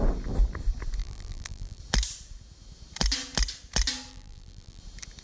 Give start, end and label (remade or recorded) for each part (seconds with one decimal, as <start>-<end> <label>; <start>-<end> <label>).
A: 0.0-1.0 recorded; 1.0-1.8 remade; 1.8-4.1 recorded; 4.1-4.8 remade; 4.8-5.2 recorded